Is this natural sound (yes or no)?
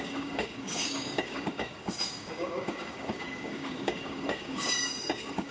no